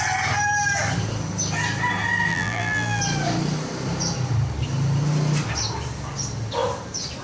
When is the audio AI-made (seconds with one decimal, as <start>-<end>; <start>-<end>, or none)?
2.3-3.0